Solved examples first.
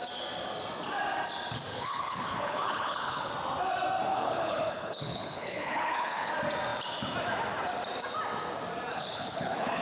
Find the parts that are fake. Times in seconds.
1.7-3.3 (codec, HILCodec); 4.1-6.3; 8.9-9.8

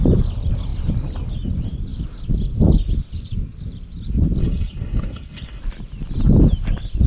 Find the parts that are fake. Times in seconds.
4.4-5.6 (codec, HILCodec)

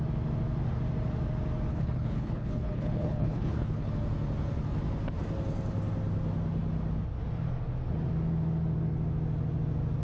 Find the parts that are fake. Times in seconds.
1.7-3.9 (codec, HILCodec)

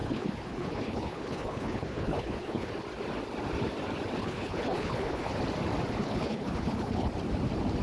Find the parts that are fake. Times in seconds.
0.0-2.7 (codec, HILCodec); 4.2-5.4; 6.0-7.1

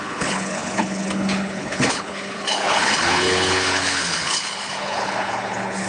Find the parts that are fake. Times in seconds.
0.0-5.9 (codec, HILCodec)

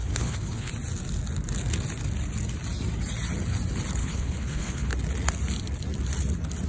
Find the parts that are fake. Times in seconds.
0.0-0.7 (codec, HILCodec); 4.0-4.9

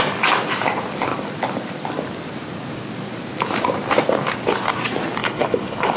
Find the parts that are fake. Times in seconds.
5.2-6.0 (codec, HILCodec)

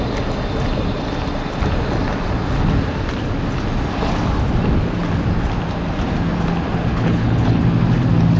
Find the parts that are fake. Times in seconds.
6.9-7.6 (codec, HILCodec)